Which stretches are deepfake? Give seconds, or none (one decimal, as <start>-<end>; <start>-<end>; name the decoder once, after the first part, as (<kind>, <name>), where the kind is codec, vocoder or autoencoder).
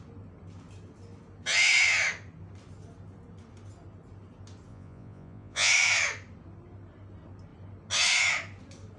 4.7-5.7 (vocoder, Vocos)